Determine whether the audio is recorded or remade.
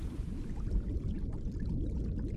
recorded